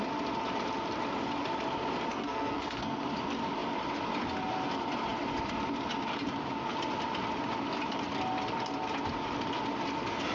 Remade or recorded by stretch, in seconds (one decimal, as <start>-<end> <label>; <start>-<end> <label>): 0.0-2.1 recorded; 2.1-3.0 remade; 3.0-10.3 recorded